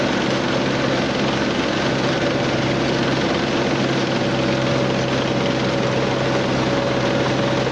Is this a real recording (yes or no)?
yes